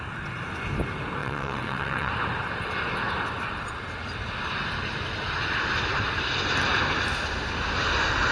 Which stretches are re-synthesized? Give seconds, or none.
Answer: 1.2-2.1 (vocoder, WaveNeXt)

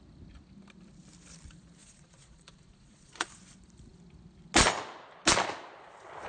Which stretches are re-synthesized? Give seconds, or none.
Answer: 1.8-3.3 (vocoder, Vocos)

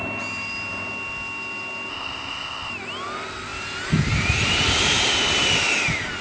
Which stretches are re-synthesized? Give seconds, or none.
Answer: 1.9-2.7 (codec, ZipCodec)

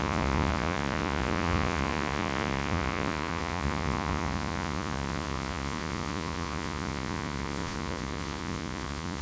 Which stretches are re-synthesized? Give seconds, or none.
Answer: 0.0-9.2 (vocoder, Vocos)

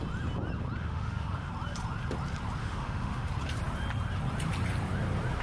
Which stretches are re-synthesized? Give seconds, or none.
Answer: 0.8-1.5 (autoencoder, DAC-VAE); 2.6-3.3